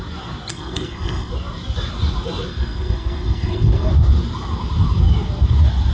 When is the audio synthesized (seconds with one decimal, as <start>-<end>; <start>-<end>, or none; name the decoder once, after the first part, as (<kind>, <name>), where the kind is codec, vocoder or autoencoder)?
0.5-1.3 (codec, SNAC); 2.5-3.9